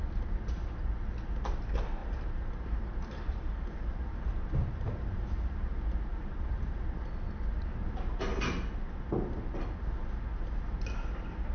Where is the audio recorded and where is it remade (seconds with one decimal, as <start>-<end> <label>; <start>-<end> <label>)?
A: 0.0-2.0 recorded; 2.0-5.6 remade; 5.6-6.1 recorded; 6.1-6.9 remade; 6.9-11.5 recorded